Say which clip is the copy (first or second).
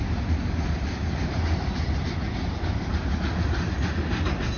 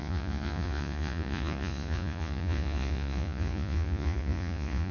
second